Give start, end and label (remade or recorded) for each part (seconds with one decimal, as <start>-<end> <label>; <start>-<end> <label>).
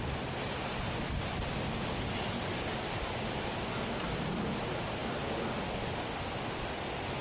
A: 0.0-7.2 recorded